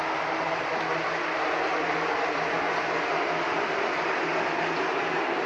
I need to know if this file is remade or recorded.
recorded